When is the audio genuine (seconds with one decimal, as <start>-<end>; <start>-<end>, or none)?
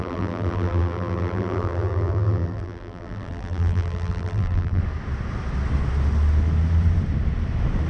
4.8-7.9